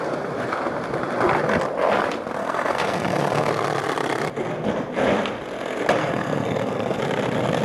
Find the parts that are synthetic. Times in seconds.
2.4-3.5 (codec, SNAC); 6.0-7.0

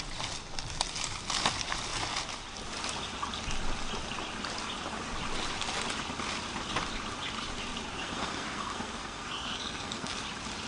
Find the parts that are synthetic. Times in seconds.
7.9-10.2 (codec, SNAC)

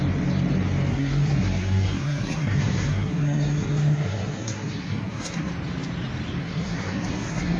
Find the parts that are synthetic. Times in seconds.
0.9-5.5 (codec, SNAC); 6.4-7.6

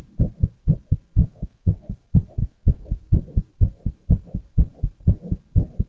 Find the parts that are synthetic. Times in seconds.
1.2-1.9 (codec, SNAC); 2.4-3.1

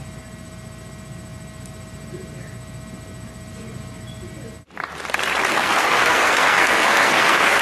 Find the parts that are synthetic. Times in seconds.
5.5-7.6 (codec, SNAC)

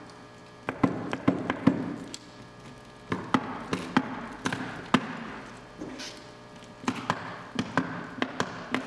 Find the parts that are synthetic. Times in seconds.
none

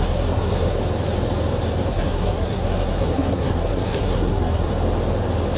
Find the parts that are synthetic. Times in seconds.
0.0-0.8 (codec, SNAC); 1.9-4.7